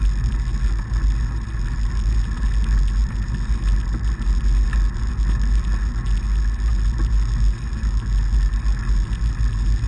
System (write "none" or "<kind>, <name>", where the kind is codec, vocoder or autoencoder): none